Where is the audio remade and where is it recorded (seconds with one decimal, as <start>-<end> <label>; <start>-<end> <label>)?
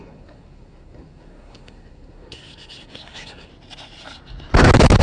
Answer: 0.0-3.5 remade; 3.5-5.0 recorded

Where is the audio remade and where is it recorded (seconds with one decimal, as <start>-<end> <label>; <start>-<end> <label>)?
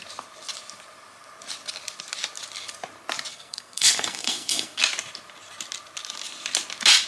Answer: 0.0-3.3 recorded; 3.3-4.8 remade; 4.8-7.1 recorded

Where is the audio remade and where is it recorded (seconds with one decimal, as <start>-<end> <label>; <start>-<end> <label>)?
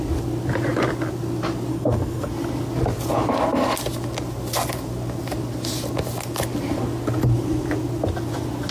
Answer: 0.0-1.7 recorded; 1.7-2.3 remade; 2.3-8.7 recorded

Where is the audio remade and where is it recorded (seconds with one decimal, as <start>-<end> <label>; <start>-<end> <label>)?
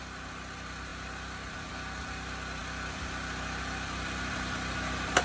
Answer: 0.0-5.2 recorded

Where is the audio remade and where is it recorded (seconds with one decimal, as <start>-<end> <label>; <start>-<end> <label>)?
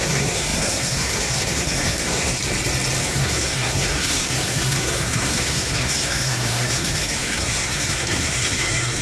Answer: 0.0-2.4 remade; 2.4-3.0 recorded; 3.0-9.0 remade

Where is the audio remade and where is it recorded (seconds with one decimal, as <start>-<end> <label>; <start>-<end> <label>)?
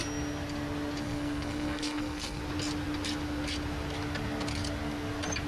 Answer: 0.0-1.0 recorded; 1.0-2.4 remade; 2.4-5.5 recorded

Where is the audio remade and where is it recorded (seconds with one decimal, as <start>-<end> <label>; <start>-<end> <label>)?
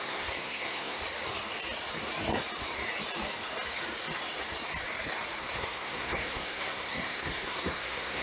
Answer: 0.0-1.0 remade; 1.0-5.4 recorded; 5.4-8.2 remade